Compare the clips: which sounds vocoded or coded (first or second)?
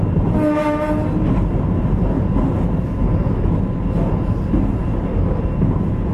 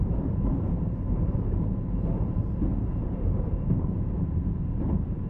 second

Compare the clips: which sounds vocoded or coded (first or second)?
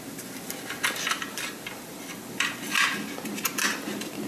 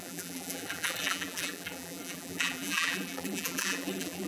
second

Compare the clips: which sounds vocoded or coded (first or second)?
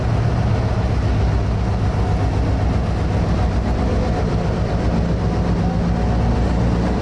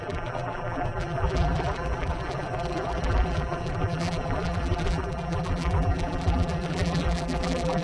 second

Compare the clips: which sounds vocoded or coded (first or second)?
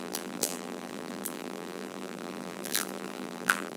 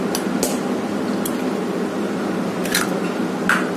first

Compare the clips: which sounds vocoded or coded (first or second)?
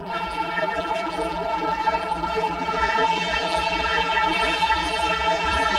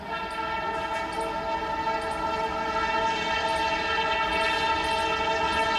first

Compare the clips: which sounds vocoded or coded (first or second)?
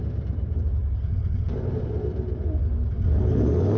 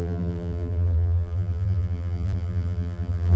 second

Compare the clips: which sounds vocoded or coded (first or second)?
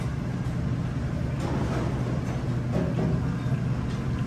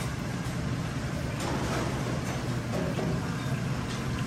second